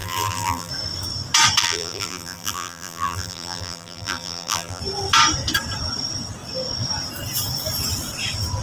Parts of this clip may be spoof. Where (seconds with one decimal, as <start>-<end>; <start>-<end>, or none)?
0.0-0.7; 1.6-4.8